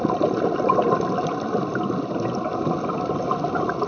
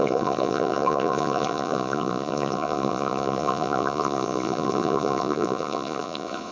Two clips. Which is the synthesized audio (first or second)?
second